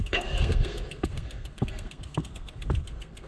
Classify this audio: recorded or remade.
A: remade